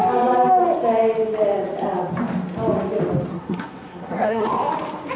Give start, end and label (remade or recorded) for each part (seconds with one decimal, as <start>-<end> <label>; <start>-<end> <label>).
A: 0.0-3.3 recorded; 3.3-4.5 remade; 4.5-5.2 recorded